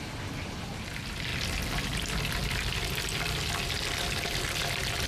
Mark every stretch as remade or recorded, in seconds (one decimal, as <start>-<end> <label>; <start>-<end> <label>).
0.0-1.3 remade; 1.3-4.4 recorded; 4.4-5.1 remade